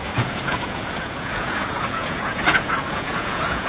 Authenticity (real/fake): fake